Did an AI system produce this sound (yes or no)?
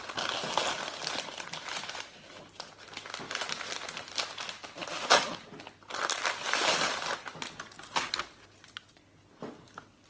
no